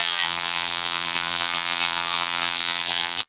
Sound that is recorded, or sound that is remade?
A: remade